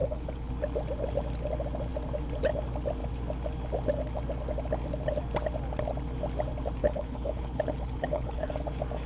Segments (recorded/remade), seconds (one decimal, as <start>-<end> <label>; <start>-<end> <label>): 0.0-0.5 remade; 0.5-6.8 recorded; 6.8-8.5 remade; 8.5-9.1 recorded